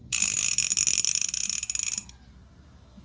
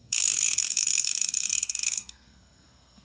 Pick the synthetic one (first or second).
second